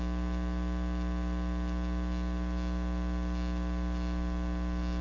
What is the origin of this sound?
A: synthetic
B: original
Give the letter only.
B